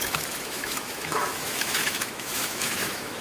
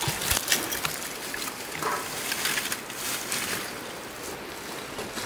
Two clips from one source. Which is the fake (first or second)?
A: first